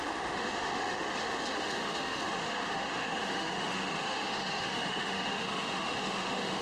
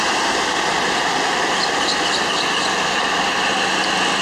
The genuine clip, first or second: second